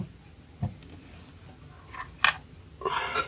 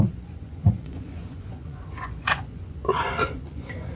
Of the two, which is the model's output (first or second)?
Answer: second